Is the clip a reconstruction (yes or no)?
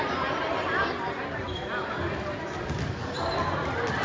no